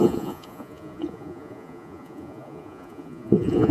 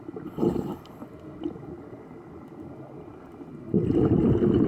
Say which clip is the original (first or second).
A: second